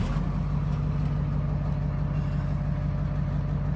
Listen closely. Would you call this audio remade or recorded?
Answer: recorded